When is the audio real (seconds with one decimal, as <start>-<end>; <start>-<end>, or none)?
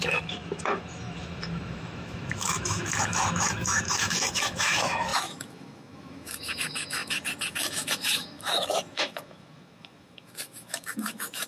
none